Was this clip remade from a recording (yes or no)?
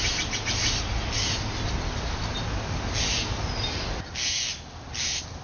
no